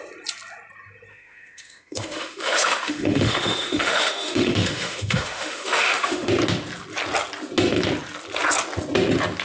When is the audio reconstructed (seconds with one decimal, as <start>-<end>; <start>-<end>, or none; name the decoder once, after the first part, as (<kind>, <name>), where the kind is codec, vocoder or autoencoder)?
1.1-6.3 (autoencoder, DAC-VAE)